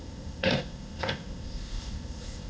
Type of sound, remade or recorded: remade